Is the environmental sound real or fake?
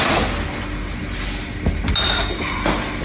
real